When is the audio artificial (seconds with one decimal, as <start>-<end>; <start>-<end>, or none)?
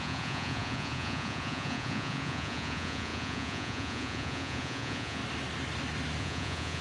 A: 0.0-5.2; 6.2-6.8